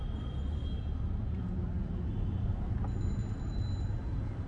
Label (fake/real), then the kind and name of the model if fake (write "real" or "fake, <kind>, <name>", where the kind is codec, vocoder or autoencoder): real